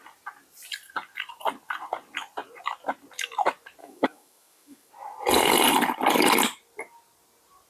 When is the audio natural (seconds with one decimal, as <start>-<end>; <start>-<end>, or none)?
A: 0.0-3.8; 4.9-7.7